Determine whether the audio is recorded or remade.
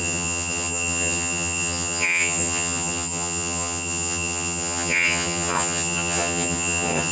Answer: remade